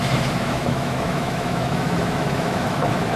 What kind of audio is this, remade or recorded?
remade